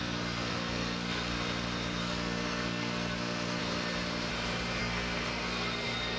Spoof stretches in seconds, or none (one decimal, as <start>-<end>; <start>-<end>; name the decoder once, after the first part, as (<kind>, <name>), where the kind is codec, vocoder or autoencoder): 0.0-1.3 (codec, SNAC); 2.0-3.6; 4.8-6.2